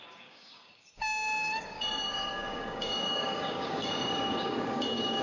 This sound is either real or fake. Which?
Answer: fake